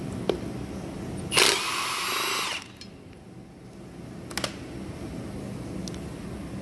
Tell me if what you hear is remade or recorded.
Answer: recorded